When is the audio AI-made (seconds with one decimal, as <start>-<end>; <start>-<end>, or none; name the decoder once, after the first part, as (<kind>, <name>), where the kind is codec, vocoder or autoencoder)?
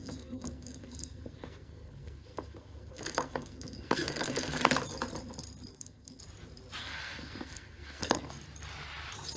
0.0-4.7 (codec, SNAC); 5.7-6.2; 6.8-8.3